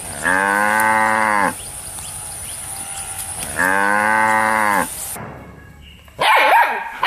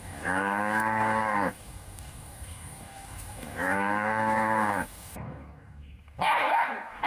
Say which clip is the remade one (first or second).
second